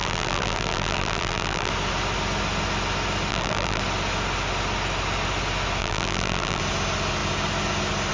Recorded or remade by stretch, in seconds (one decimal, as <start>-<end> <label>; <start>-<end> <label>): 0.0-1.7 remade; 1.7-3.3 recorded; 3.3-3.8 remade; 3.8-5.8 recorded; 5.8-6.6 remade; 6.6-8.1 recorded